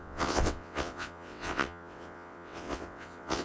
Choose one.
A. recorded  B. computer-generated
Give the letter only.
B